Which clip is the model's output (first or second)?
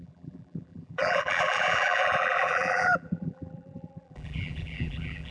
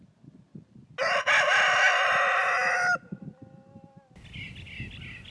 first